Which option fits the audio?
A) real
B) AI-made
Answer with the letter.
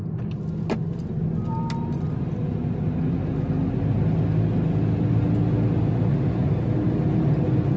A